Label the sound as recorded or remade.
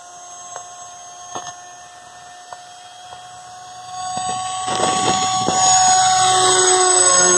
recorded